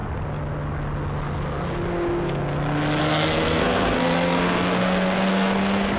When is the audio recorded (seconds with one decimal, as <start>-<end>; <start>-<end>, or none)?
0.0-3.0